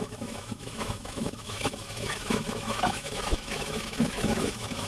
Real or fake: fake